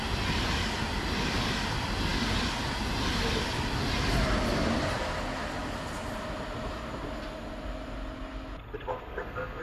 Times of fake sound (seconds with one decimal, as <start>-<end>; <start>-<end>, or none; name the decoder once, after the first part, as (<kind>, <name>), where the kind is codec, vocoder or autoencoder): 8.9-9.6 (codec, SNAC)

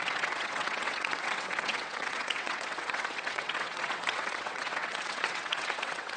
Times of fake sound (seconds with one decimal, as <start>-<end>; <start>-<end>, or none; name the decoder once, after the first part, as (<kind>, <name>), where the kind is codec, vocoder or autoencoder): 0.0-6.2 (vocoder, WaveNeXt)

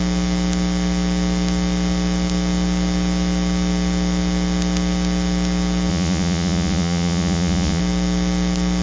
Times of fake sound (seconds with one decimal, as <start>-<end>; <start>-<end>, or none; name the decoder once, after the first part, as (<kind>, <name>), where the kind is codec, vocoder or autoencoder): 5.9-7.8 (vocoder, Vocos)